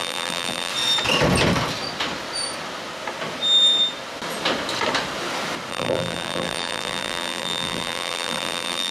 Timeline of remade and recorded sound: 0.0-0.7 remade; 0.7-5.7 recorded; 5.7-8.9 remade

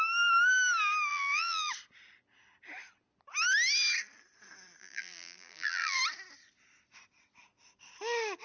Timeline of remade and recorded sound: 0.0-1.1 recorded; 1.1-1.7 remade; 1.7-4.8 recorded; 4.8-6.0 remade; 6.0-8.4 recorded

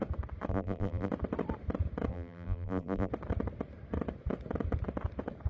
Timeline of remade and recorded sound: 0.0-0.5 recorded; 0.5-1.1 remade; 1.1-2.1 recorded; 2.1-3.1 remade; 3.1-5.5 recorded